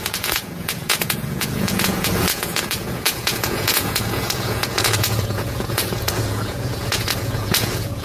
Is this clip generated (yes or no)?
yes